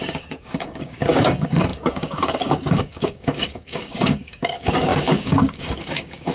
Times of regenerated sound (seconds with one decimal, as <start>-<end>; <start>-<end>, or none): 0.0-6.3